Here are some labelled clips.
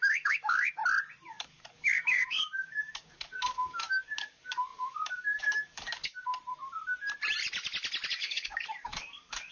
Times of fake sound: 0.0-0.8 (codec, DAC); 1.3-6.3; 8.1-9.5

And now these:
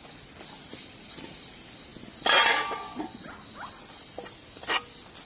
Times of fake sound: none

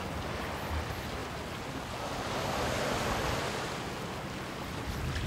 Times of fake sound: none

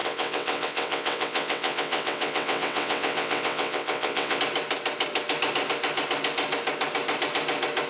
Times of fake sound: 0.0-4.4 (vocoder, WaveNeXt)

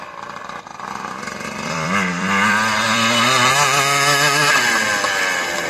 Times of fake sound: 0.7-3.5 (vocoder, BigVGAN v2)

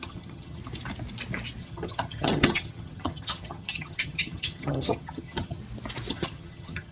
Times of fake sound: 0.0-0.6 (vocoder, HiFi-GAN); 1.6-5.6; 6.1-6.9

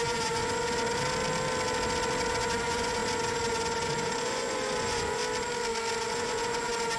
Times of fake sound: 0.0-0.4 (vocoder, Vocos); 2.6-3.0; 3.5-5.2; 6.1-7.0

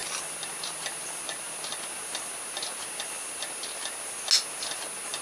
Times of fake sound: none